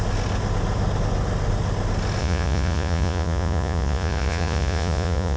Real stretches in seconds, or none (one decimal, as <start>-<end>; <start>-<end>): 0.0-2.2